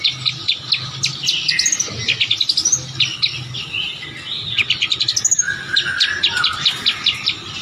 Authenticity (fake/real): real